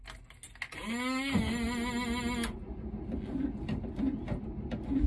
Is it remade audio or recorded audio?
recorded